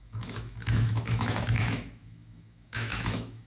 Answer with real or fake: fake